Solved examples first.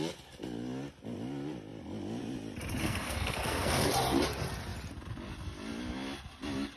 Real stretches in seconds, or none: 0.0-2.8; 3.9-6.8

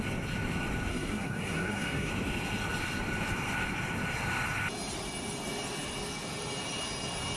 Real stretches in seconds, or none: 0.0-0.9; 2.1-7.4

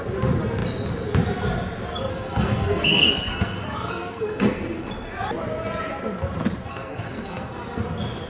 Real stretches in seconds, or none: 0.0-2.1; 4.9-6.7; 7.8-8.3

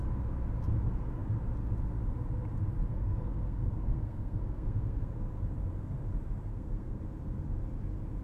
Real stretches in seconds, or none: 0.0-2.9; 5.1-6.5; 7.0-8.2

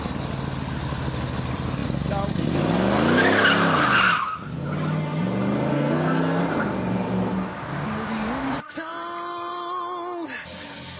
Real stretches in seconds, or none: 0.0-5.7; 6.4-11.0